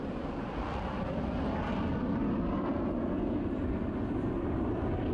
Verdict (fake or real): real